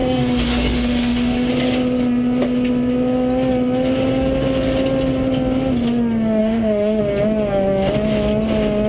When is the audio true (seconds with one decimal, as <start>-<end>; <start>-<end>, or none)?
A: 1.5-6.4; 7.0-8.9